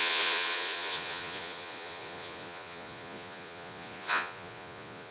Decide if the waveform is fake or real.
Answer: fake